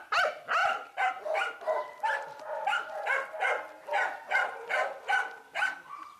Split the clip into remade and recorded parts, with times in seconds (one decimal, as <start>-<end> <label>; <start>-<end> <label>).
0.0-6.2 recorded